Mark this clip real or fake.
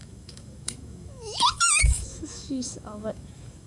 fake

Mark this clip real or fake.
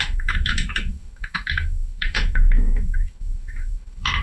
fake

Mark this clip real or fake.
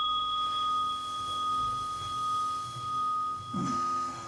fake